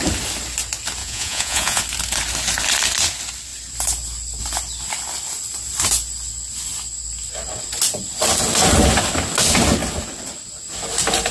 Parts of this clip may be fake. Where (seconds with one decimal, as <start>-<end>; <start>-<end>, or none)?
1.0-1.8